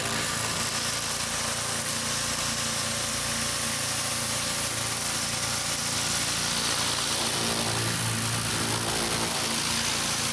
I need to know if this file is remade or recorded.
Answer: recorded